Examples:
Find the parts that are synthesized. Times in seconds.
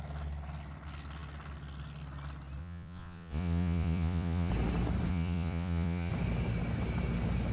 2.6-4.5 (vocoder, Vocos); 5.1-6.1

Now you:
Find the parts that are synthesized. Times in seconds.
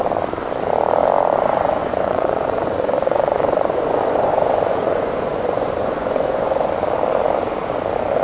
1.8-6.7 (vocoder, Vocos)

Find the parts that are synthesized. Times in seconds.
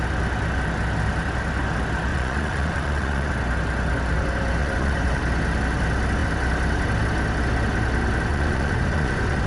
2.1-3.3 (vocoder, Vocos); 4.6-5.2; 8.3-9.5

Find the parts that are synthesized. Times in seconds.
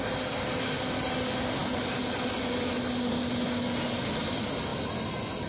none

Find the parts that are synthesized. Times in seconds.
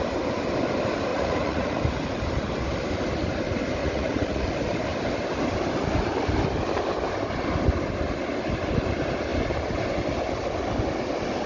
1.1-1.8 (vocoder, Vocos); 3.8-4.5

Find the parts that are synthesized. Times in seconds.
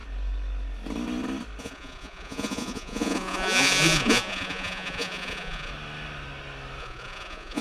1.6-5.7 (vocoder, Vocos); 6.8-7.6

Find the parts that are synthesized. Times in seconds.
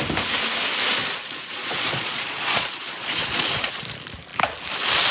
1.2-3.8 (vocoder, Vocos)